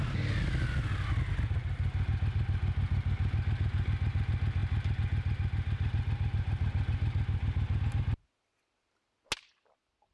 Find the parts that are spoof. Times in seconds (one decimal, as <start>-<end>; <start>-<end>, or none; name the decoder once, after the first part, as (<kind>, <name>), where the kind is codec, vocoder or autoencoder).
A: none